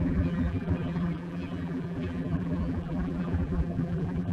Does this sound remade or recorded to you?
remade